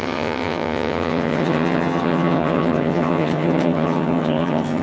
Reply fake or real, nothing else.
fake